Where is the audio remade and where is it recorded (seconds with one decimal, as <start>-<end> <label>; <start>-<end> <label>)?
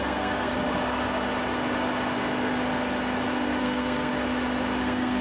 0.0-0.5 remade; 0.5-3.6 recorded; 3.6-4.1 remade; 4.1-4.8 recorded; 4.8-5.2 remade